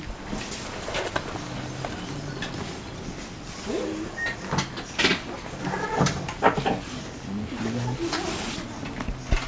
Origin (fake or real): real